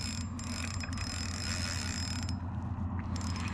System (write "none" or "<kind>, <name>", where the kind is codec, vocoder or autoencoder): none